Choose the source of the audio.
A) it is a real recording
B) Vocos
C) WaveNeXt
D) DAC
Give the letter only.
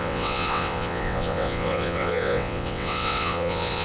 C